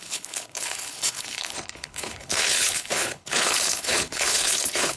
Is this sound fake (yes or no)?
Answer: yes